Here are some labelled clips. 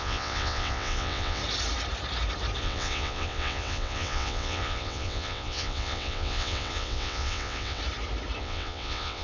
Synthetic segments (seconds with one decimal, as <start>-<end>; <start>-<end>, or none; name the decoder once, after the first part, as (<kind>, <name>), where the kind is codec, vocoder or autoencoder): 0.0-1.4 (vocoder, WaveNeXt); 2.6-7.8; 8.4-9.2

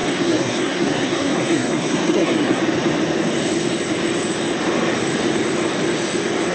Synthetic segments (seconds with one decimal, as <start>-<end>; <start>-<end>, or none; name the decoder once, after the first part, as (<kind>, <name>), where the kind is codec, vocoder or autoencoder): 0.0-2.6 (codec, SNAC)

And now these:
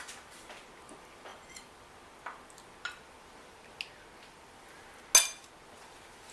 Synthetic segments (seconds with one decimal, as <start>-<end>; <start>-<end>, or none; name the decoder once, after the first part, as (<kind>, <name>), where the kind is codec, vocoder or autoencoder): none